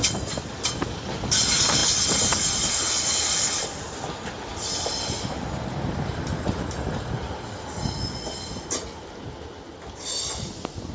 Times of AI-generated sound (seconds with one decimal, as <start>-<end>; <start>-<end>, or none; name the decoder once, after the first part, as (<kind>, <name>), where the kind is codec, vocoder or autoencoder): none